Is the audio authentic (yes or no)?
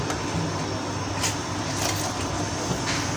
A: yes